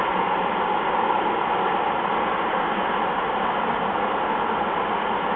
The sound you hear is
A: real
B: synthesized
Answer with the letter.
A